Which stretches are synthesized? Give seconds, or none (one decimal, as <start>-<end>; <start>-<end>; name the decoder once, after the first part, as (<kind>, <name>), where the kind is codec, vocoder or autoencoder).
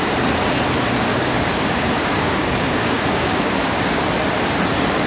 1.1-4.0 (codec, DAC)